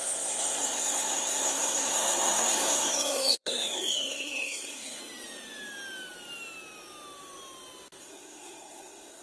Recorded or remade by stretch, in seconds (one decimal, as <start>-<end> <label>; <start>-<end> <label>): 0.0-5.0 remade; 5.0-8.0 recorded; 8.0-9.2 remade